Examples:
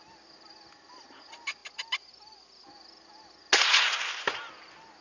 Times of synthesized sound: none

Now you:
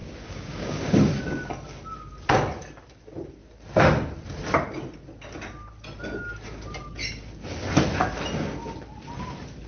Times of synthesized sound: 0.0-1.2 (codec, DAC)

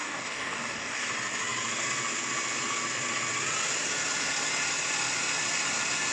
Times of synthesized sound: 0.0-1.1 (codec, DAC)

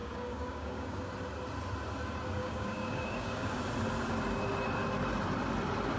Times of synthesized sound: 0.0-1.0 (codec, DAC); 2.4-3.6

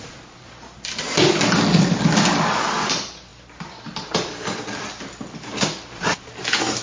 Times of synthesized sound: none